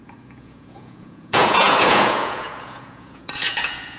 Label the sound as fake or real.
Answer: fake